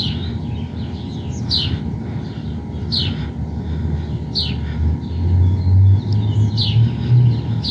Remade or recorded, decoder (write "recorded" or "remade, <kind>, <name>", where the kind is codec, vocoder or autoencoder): recorded